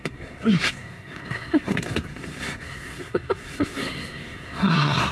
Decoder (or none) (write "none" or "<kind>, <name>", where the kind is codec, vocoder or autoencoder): codec, SNAC